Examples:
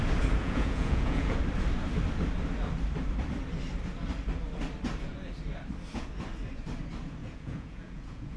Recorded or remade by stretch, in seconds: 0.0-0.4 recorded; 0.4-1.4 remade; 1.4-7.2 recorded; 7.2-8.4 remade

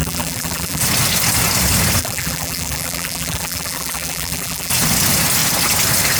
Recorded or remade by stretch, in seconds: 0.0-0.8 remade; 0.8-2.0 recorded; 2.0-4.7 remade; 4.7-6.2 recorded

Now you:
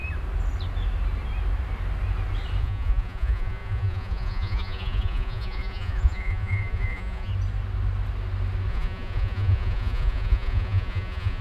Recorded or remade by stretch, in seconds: 0.0-2.6 recorded; 2.6-7.3 remade; 7.3-8.7 recorded; 8.7-11.4 remade